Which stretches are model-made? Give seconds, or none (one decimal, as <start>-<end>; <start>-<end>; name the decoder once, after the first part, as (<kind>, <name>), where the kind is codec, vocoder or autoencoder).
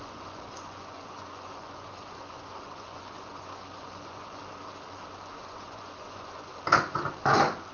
0.0-4.4 (vocoder, Vocos); 5.4-6.5